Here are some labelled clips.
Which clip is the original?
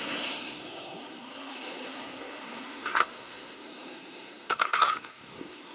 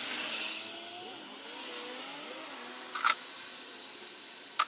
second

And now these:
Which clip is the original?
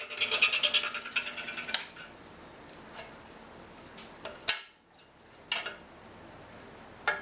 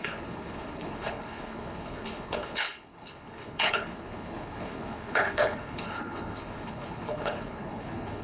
first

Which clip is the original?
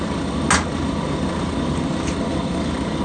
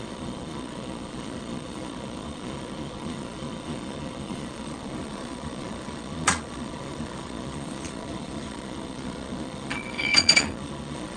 first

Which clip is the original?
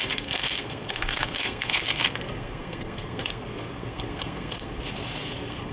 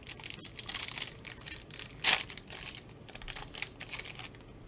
second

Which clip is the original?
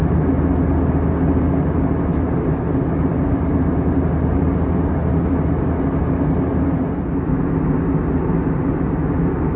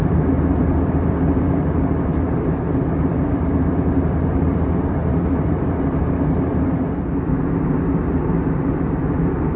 first